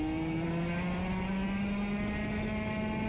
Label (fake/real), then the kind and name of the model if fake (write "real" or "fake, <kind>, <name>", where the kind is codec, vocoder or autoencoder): real